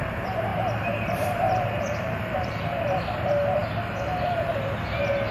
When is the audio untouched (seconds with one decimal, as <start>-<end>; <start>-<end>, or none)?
0.0-0.5; 3.0-5.3